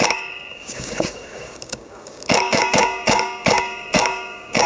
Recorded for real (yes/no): no